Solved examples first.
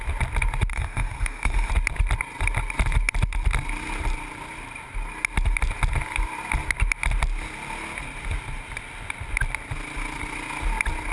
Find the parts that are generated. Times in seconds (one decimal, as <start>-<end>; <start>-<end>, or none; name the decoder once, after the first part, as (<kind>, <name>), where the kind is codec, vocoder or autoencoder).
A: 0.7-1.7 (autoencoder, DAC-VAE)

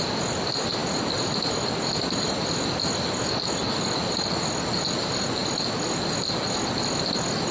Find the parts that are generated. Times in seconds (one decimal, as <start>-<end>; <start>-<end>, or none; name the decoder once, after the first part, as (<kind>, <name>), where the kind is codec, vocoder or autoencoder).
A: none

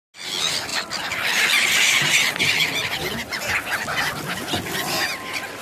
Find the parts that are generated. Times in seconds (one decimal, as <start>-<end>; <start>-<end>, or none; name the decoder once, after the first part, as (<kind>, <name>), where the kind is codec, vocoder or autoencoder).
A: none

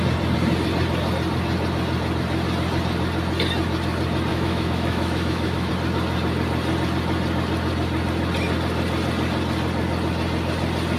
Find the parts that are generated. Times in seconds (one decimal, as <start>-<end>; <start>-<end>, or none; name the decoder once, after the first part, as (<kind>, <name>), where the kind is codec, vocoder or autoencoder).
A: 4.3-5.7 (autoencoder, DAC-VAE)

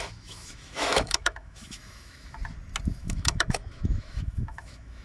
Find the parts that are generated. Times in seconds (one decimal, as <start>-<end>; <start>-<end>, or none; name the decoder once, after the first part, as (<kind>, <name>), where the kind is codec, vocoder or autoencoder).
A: 0.0-2.4 (autoencoder, DAC-VAE); 2.9-5.0